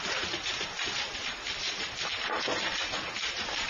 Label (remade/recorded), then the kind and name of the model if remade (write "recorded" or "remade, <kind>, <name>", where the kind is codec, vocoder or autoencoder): recorded